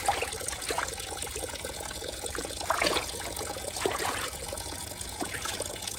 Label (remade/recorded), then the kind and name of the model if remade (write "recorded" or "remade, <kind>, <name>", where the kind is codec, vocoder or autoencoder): remade, vocoder, Vocos